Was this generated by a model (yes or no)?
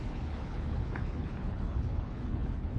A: yes